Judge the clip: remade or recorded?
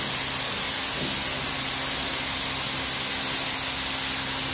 recorded